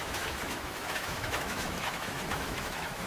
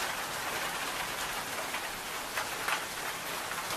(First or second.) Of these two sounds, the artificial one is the first